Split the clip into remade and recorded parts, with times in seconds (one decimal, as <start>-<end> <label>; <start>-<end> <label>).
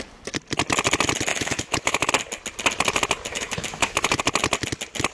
0.0-1.3 recorded; 1.3-2.1 remade; 2.1-3.3 recorded; 3.3-4.2 remade; 4.2-5.1 recorded